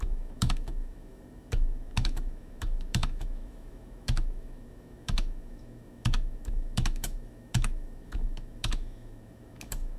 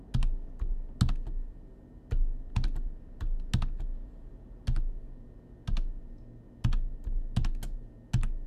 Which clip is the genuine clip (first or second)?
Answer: second